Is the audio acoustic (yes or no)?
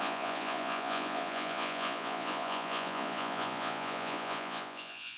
no